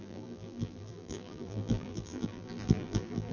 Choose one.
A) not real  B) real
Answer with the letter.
A